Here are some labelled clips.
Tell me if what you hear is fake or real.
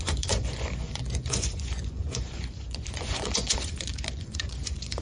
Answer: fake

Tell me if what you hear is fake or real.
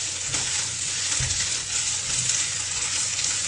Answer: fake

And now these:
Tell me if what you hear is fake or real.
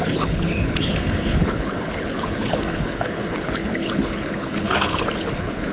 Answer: fake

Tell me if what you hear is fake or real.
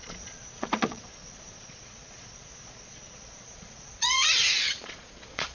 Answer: fake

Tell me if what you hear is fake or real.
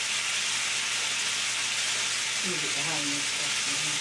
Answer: real